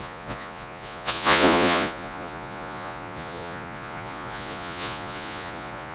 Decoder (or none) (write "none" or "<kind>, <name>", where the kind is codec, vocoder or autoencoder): vocoder, Vocos